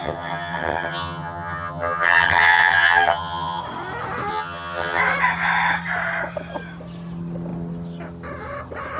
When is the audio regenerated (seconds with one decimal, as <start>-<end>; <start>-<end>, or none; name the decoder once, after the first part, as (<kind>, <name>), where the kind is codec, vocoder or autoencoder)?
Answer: 0.0-3.6 (vocoder, HiFi-GAN); 4.3-5.0

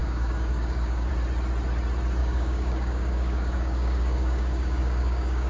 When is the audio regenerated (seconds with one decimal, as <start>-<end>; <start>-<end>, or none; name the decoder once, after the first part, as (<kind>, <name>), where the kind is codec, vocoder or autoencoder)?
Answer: 0.0-1.1 (codec, DAC); 2.2-5.5

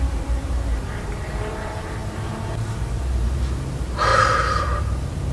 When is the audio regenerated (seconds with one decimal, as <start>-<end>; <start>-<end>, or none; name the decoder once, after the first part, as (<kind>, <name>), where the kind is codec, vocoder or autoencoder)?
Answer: 0.0-5.3 (vocoder, BigVGAN v2)

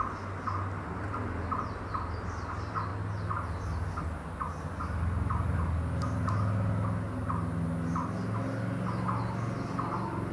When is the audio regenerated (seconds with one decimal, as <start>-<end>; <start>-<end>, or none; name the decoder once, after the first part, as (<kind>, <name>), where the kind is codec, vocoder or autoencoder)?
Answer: none

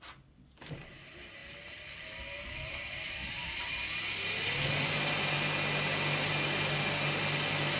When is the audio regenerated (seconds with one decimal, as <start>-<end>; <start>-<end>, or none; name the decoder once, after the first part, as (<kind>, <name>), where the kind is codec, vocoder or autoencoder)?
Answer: none

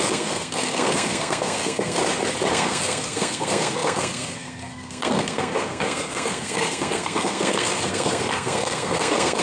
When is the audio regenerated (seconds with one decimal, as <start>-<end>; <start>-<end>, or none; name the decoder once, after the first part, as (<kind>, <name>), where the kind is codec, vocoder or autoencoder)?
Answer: 0.0-2.0 (codec, SNAC); 2.5-9.4

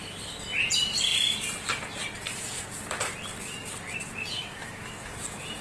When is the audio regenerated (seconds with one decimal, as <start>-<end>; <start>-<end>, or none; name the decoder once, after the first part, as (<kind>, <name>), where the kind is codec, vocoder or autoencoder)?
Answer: 4.4-5.1 (autoencoder, DAC-VAE)

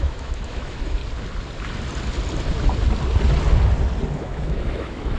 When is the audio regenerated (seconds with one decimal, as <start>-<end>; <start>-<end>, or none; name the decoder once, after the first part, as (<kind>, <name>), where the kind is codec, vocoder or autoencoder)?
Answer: 0.0-1.0 (autoencoder, DAC-VAE); 4.1-5.2